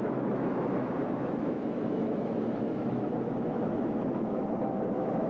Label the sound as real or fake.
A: fake